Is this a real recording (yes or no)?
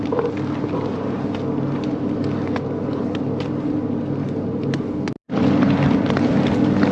yes